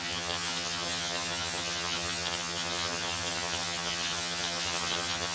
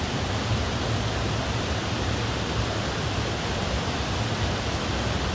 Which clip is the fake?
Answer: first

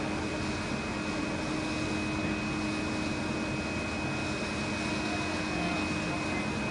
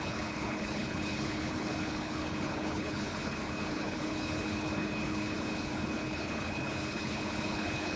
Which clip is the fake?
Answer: second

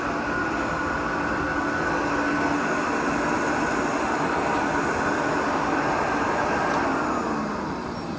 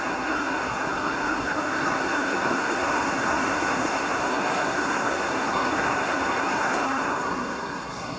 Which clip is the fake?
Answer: second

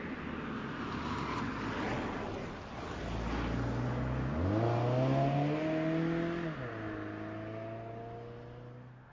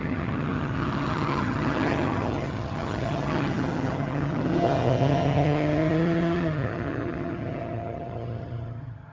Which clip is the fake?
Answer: second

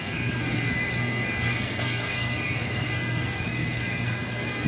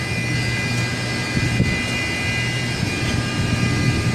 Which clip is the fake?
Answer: first